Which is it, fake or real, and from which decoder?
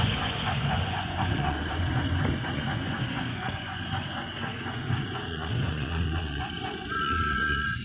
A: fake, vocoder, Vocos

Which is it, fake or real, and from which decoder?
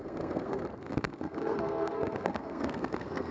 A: fake, codec, SNAC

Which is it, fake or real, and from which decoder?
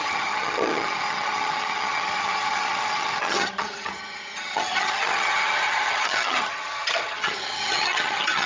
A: fake, vocoder, HiFi-GAN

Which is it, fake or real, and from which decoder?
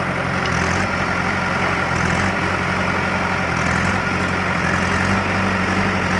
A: real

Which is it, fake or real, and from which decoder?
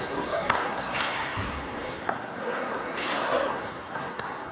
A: fake, codec, SNAC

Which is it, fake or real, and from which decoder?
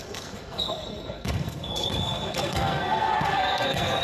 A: fake, codec, SNAC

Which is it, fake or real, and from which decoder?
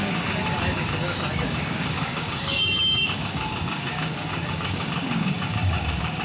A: fake, codec, DAC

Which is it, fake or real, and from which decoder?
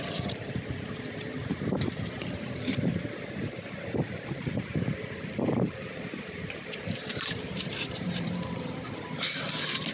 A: fake, vocoder, BigVGAN v2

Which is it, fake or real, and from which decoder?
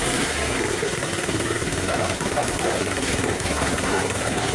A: fake, codec, SNAC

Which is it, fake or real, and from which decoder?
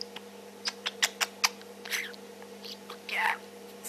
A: real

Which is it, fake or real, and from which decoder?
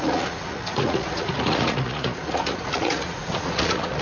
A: fake, vocoder, Vocos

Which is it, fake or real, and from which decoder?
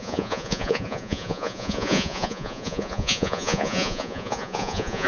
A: fake, vocoder, Vocos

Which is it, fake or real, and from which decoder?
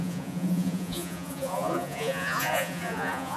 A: fake, vocoder, Vocos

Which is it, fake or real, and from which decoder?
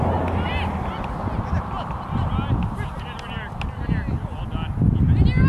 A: real